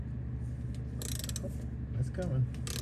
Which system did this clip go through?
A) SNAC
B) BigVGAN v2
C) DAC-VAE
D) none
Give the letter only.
D